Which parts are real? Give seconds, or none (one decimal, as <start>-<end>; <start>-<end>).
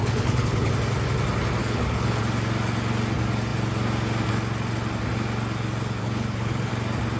0.7-1.6; 2.2-6.0; 6.7-7.2